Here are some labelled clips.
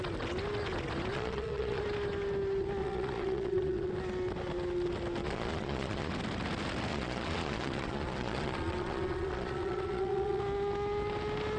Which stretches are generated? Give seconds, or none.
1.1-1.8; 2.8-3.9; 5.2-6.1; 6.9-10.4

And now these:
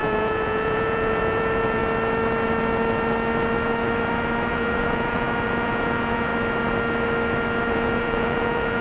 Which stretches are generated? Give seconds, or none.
0.0-1.8; 4.5-6.3; 7.7-8.8

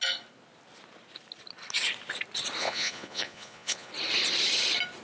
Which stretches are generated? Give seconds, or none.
2.6-3.9

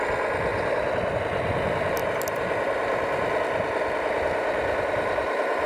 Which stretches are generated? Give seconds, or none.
none